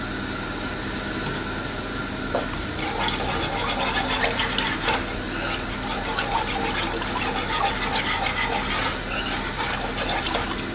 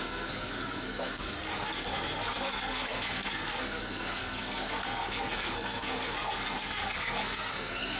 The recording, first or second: first